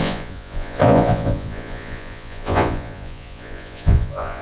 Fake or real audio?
fake